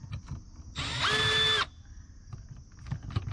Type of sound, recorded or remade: recorded